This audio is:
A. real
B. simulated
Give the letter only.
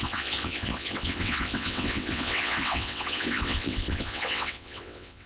B